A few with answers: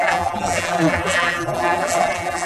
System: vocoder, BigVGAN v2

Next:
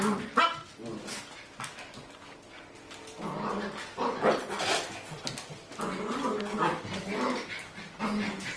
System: none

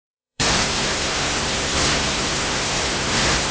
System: codec, SNAC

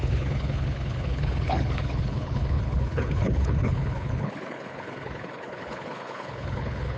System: codec, HILCodec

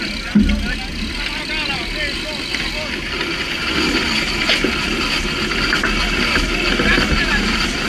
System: none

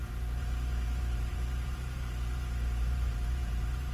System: vocoder, BigVGAN v2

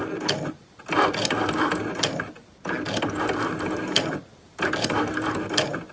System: none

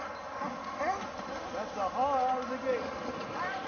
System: none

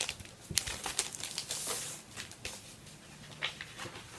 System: none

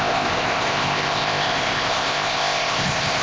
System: codec, ZipCodec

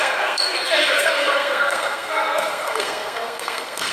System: codec, SNAC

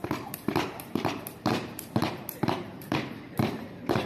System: vocoder, BigVGAN v2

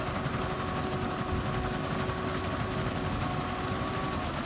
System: none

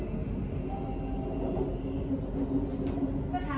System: none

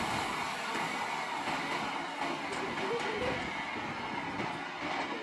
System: none